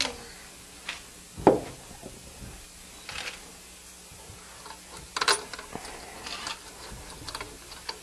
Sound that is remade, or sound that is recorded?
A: recorded